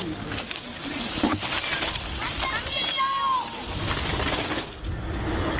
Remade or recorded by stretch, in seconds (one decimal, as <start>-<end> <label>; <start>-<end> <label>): 0.0-5.6 recorded